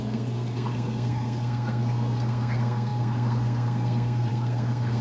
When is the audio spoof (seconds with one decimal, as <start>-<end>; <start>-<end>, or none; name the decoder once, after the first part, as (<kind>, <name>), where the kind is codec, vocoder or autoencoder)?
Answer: 0.0-5.0 (codec, SNAC)